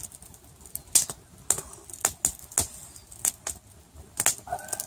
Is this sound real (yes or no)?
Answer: yes